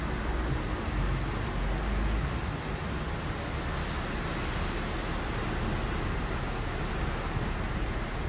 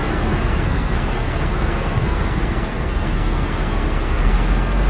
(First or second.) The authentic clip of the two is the first